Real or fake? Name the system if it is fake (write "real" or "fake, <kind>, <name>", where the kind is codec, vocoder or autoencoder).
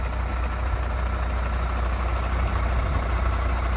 real